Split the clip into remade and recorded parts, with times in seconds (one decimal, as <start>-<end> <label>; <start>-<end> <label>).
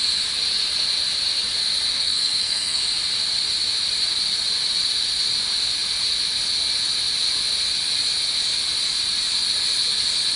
0.0-1.9 recorded; 1.9-2.8 remade; 2.8-10.4 recorded